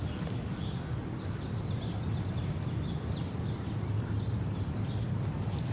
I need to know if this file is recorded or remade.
recorded